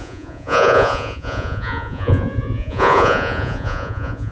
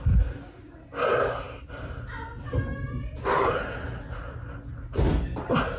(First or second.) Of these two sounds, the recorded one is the second